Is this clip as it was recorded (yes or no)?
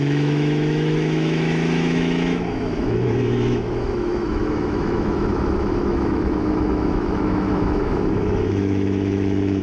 no